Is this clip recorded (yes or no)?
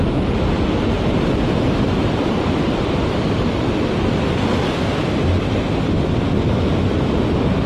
yes